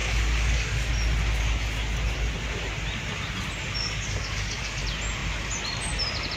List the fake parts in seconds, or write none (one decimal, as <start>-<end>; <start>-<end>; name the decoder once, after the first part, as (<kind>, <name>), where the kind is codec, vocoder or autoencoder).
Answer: 0.0-0.9 (codec, DAC); 3.8-4.8

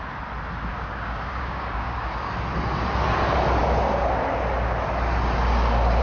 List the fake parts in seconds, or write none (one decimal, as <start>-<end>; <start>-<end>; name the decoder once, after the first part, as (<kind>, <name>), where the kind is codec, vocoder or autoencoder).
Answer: 0.7-2.3 (codec, DAC)

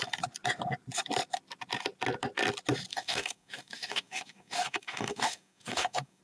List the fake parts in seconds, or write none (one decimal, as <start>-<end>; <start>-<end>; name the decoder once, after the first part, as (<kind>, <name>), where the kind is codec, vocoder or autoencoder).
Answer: 2.9-6.2 (codec, DAC)